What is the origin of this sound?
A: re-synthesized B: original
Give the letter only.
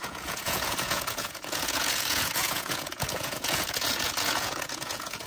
A